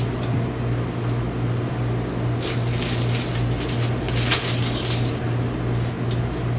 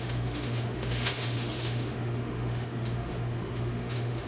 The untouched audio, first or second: first